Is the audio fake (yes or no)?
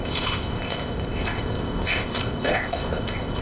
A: yes